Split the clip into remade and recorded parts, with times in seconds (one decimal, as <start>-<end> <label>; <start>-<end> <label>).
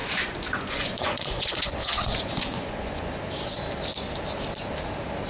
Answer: 0.0-3.2 remade; 3.2-5.3 recorded